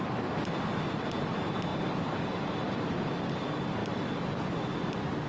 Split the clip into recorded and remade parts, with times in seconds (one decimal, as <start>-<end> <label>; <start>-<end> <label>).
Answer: 0.0-5.3 recorded